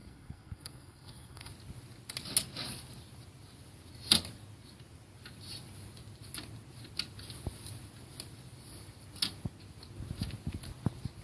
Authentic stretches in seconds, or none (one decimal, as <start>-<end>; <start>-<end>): 1.5-11.2